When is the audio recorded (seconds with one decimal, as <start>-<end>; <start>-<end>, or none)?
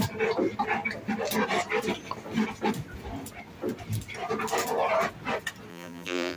0.0-5.7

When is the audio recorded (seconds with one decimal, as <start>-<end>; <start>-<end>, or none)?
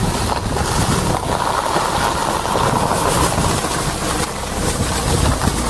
0.0-5.7